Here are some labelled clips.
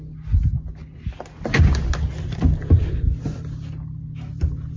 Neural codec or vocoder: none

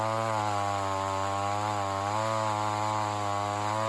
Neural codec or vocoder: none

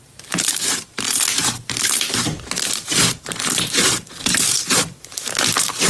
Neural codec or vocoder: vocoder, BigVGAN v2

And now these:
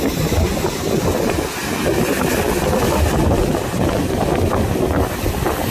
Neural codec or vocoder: none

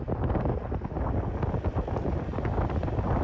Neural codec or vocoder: none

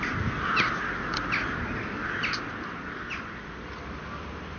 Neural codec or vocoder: none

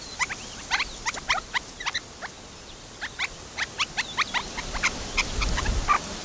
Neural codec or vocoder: none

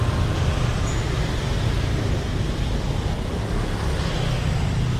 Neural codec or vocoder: none